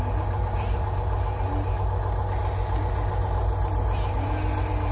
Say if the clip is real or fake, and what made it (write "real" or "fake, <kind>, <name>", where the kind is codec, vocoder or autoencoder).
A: real